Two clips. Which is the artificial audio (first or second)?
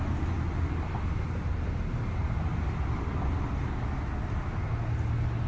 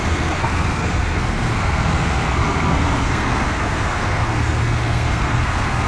second